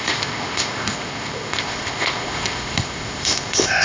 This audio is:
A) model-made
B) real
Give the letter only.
A